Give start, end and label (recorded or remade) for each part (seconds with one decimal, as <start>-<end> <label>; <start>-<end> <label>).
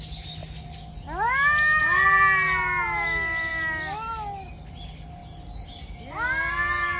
0.0-7.0 recorded